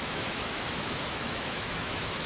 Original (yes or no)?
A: no